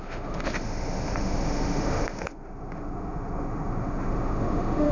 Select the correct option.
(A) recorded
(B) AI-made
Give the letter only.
B